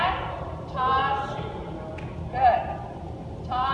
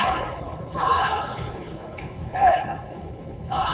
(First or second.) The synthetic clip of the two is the second